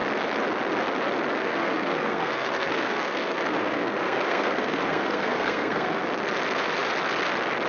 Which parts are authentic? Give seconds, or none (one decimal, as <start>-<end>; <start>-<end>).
0.0-1.4; 6.0-7.7